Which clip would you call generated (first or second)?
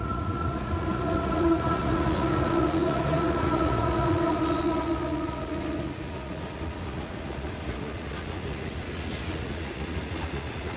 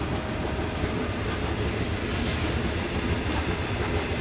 first